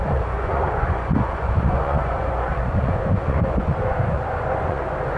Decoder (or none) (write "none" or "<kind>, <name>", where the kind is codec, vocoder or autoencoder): vocoder, Vocos